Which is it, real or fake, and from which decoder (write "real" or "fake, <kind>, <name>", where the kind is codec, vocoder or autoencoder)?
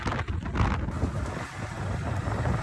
real